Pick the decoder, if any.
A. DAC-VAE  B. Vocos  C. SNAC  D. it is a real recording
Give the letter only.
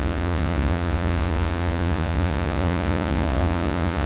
B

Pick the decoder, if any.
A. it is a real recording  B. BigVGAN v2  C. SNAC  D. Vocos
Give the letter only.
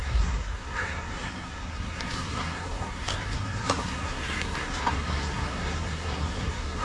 C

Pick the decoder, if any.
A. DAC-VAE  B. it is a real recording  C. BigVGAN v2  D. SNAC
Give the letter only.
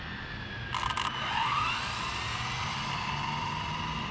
B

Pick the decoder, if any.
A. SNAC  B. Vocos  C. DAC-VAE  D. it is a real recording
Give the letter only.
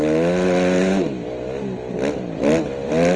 D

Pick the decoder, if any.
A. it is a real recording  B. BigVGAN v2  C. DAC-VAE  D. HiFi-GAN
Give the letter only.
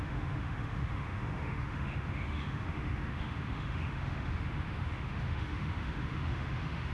C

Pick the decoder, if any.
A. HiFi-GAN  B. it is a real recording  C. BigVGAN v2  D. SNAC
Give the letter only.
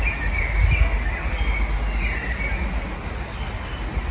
B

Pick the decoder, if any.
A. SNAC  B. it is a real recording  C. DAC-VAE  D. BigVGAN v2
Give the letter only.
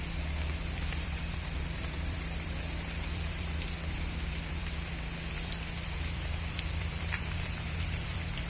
D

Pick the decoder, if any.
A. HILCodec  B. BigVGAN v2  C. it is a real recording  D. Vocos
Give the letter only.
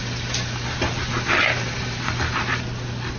C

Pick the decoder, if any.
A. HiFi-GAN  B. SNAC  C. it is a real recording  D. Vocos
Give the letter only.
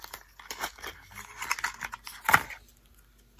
C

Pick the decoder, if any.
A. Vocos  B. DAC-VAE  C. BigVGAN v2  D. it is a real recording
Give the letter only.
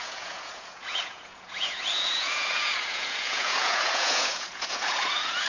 A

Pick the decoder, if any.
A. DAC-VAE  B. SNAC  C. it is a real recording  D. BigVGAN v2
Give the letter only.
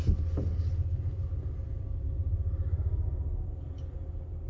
C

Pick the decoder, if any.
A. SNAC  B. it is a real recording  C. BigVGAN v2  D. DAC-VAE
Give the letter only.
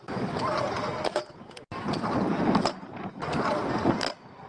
B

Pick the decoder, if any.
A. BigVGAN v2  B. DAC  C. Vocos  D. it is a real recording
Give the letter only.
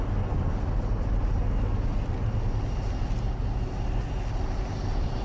D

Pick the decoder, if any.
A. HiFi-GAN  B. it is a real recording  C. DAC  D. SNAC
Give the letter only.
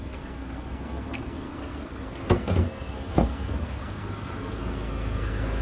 D